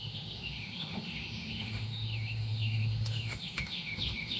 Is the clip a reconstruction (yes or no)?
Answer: yes